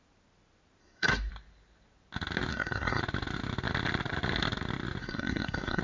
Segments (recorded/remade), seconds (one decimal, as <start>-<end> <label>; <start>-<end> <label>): 0.0-0.8 recorded; 0.8-1.3 remade; 1.3-2.5 recorded; 2.5-3.0 remade; 3.0-5.0 recorded; 5.0-5.8 remade